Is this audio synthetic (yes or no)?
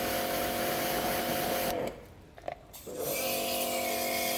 no